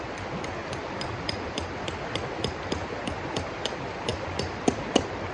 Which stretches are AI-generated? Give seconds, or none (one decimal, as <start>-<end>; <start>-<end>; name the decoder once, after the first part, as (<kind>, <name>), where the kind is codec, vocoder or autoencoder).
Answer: 0.0-4.1 (vocoder, BigVGAN v2); 4.8-5.3